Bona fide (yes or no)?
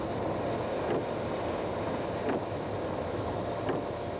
yes